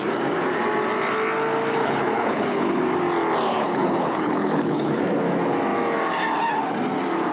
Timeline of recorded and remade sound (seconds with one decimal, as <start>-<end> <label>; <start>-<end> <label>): 0.0-1.8 recorded; 1.8-2.8 remade; 2.8-3.5 recorded; 3.5-5.0 remade; 5.0-7.3 recorded